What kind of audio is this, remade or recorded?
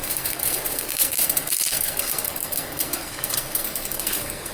remade